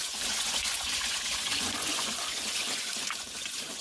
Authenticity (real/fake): fake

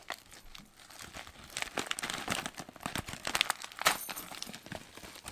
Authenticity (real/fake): real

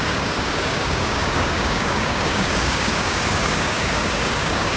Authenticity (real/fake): fake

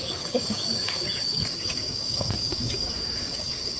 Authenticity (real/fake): fake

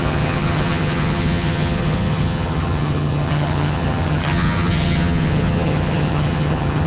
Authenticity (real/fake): fake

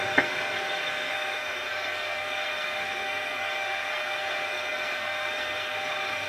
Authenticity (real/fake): fake